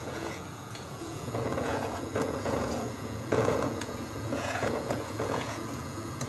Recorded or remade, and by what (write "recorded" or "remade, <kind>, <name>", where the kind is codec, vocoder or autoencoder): remade, vocoder, Vocos